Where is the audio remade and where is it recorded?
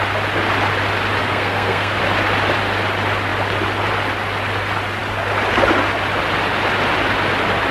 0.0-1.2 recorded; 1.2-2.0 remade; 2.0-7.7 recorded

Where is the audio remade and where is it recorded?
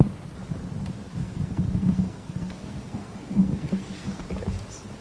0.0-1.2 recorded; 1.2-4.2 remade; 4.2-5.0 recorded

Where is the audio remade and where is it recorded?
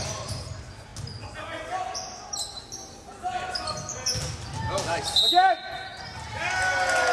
0.0-7.1 recorded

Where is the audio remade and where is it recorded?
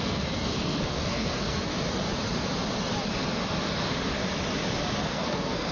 0.0-1.7 remade; 1.7-5.1 recorded; 5.1-5.7 remade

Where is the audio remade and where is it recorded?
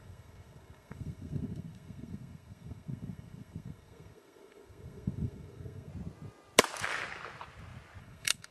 0.0-5.9 remade; 5.9-8.0 recorded; 8.0-8.5 remade